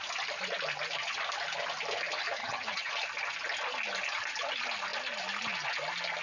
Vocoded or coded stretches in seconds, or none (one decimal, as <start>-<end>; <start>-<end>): 2.4-2.9